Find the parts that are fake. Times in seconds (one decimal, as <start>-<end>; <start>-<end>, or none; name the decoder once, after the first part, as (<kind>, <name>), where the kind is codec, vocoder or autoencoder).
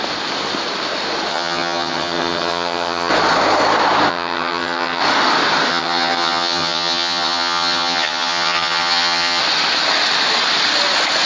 1.3-3.1 (vocoder, HiFi-GAN); 4.1-5.0; 5.7-9.4